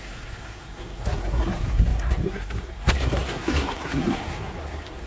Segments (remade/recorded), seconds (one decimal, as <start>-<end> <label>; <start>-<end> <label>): 0.0-5.1 remade